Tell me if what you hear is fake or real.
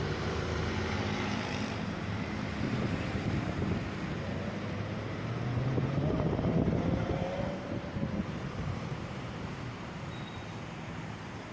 fake